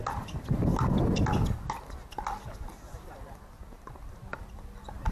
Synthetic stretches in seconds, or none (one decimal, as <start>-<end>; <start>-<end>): none